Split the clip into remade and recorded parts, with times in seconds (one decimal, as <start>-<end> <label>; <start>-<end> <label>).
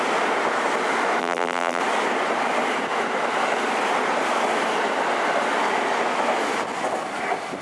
0.0-1.2 recorded; 1.2-1.8 remade; 1.8-7.6 recorded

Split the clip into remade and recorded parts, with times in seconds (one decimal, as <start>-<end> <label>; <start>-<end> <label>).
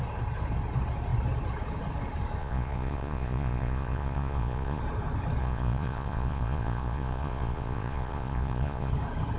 0.0-2.4 recorded; 2.4-4.8 remade; 4.8-5.4 recorded; 5.4-8.9 remade; 8.9-9.4 recorded